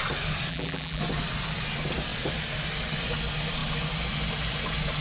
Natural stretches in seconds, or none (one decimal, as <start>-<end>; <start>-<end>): 0.0-0.5; 1.0-5.0